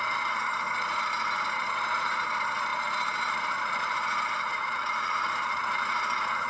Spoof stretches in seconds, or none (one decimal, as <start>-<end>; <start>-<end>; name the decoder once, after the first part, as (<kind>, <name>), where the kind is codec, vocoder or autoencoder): 0.0-2.7 (vocoder, BigVGAN v2); 3.3-6.5